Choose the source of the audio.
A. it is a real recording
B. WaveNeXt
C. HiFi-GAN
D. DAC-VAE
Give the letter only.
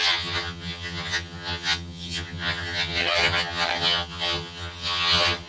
C